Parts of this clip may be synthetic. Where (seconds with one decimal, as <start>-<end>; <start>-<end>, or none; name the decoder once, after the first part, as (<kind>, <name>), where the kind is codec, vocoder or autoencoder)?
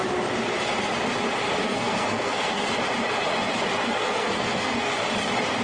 1.6-2.7 (codec, SNAC); 3.8-4.9